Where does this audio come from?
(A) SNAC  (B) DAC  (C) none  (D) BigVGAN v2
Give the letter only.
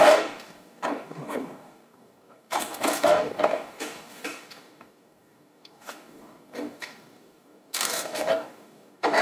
B